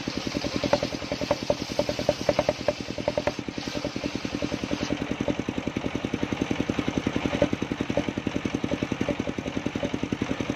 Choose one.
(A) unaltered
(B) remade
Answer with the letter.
A